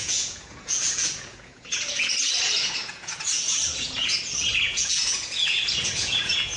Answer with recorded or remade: remade